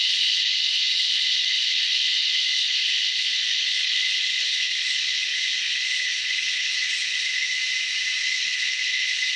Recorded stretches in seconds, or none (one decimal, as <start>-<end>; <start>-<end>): 7.6-8.2